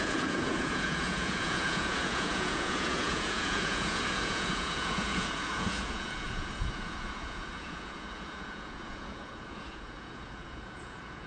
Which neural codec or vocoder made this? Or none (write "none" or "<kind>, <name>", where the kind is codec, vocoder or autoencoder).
vocoder, Vocos